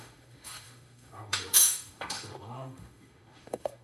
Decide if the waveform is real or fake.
fake